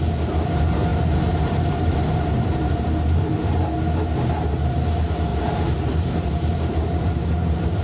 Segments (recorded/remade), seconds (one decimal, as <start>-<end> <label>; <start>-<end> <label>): 0.0-0.9 recorded; 0.9-3.6 remade; 3.6-5.3 recorded; 5.3-7.8 remade